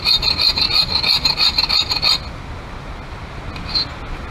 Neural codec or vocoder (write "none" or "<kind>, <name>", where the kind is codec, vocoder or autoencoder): none